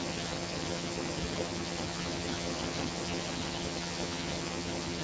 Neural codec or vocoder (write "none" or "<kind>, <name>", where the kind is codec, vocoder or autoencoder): vocoder, HiFi-GAN